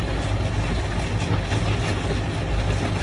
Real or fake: real